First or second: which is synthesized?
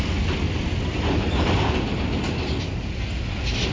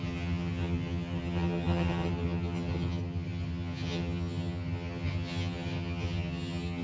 second